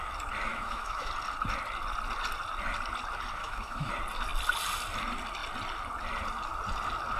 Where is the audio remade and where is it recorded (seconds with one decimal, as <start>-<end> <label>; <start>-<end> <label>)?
0.0-0.5 recorded; 0.5-1.1 remade; 1.1-3.4 recorded; 3.4-3.9 remade; 3.9-7.2 recorded